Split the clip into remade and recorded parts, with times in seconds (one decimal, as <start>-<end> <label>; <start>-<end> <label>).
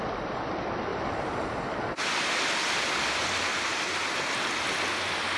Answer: 0.0-5.4 recorded